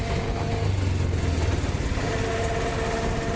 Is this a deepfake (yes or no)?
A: no